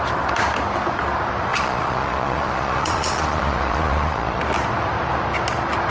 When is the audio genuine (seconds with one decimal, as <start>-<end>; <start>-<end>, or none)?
0.0-1.5; 4.4-5.9